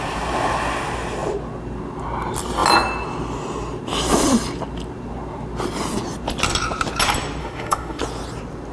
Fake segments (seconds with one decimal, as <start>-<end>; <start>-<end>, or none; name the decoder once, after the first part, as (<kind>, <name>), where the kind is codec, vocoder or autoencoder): 7.4-8.0 (autoencoder, DAC-VAE)